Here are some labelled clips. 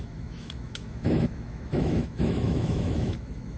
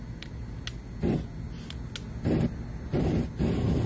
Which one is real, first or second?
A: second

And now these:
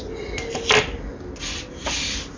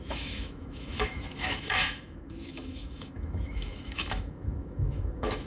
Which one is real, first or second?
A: first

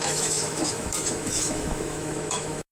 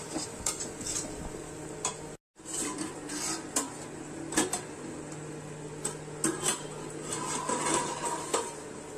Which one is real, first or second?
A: second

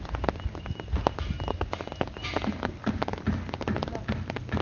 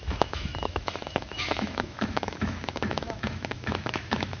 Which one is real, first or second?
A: first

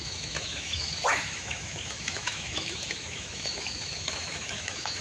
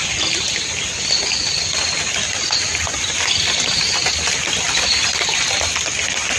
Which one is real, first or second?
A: second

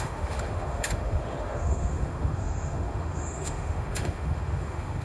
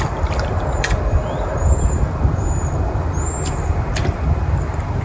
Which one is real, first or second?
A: second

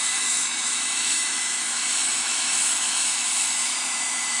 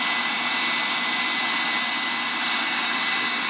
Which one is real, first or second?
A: second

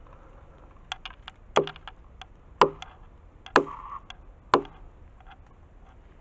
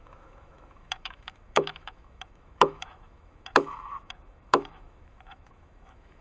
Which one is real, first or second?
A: first